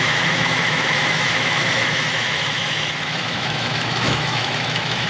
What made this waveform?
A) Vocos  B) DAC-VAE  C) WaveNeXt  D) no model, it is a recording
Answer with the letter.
B